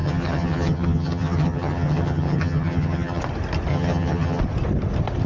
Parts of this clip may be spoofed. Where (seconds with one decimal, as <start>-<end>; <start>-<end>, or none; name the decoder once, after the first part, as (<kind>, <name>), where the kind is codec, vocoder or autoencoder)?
0.0-3.2 (vocoder, HiFi-GAN); 3.7-4.4